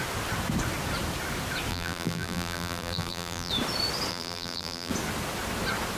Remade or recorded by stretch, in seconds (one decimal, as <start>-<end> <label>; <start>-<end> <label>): 0.0-1.7 recorded; 1.7-3.5 remade; 3.5-4.1 recorded; 4.1-4.9 remade; 4.9-6.0 recorded